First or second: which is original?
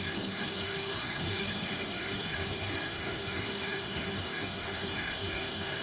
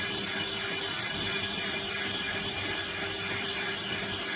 second